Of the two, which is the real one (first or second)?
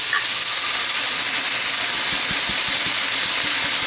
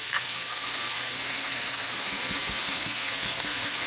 first